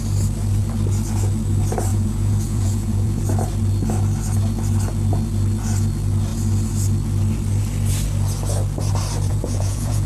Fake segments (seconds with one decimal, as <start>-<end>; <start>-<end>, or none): 1.9-3.2; 9.3-10.1